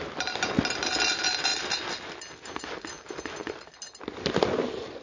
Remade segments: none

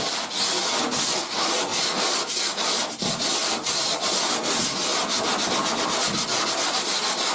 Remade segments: none

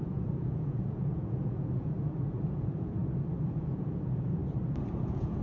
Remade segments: 0.0-3.0 (vocoder, Vocos); 3.5-4.4; 5.0-5.4

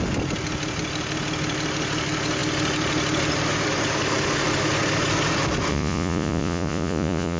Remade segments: 5.7-7.4 (vocoder, Vocos)

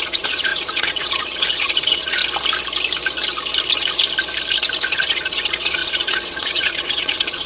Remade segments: 0.0-2.2 (vocoder, Vocos); 4.9-7.5

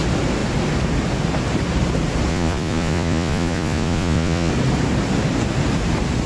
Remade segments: 2.3-4.5 (vocoder, Vocos)

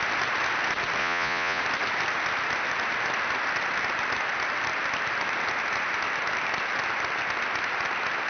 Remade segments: 1.0-1.6 (vocoder, Vocos)

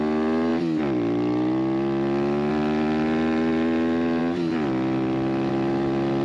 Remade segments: none